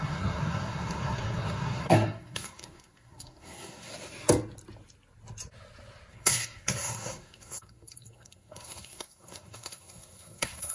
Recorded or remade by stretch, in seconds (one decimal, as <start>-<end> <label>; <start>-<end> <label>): 0.0-3.9 remade; 3.9-6.1 recorded; 6.1-10.7 remade